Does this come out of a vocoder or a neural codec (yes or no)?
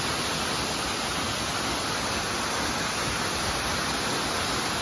no